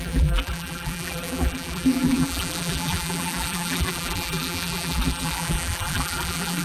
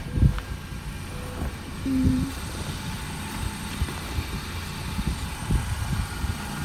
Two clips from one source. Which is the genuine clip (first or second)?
second